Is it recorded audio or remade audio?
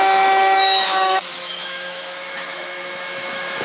remade